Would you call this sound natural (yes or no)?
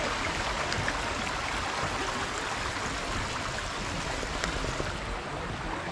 yes